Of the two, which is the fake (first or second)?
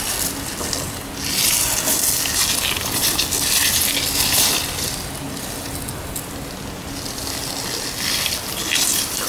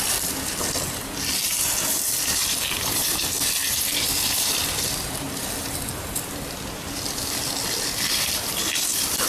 second